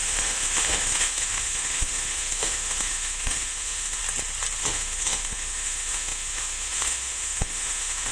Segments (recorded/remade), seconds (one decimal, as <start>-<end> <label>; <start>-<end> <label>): 0.0-4.0 remade; 4.0-4.6 recorded; 4.6-8.1 remade